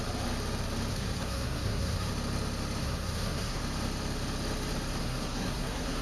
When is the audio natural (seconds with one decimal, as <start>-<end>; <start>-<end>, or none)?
0.0-0.9; 2.1-2.8; 3.6-5.0